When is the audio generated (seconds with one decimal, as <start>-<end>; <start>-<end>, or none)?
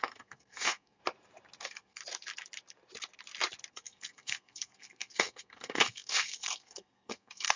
0.0-1.0; 1.6-2.0; 3.7-7.6